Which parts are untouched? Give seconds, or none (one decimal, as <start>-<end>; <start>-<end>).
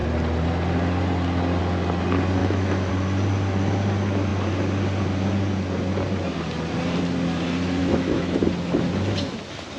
0.0-2.4; 2.9-7.8; 8.4-9.8